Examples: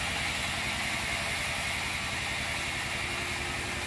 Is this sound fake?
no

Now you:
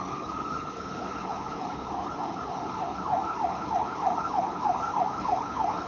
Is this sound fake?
yes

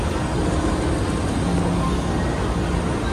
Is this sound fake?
no